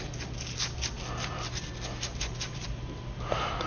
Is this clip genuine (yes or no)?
yes